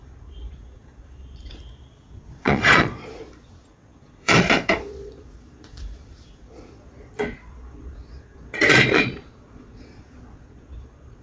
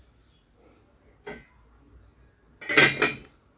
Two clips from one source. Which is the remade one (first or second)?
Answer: first